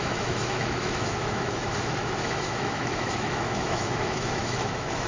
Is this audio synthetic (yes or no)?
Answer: yes